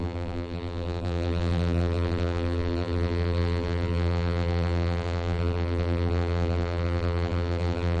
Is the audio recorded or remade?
remade